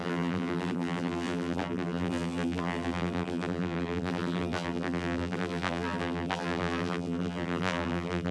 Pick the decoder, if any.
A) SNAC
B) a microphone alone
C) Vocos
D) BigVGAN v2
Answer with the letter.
D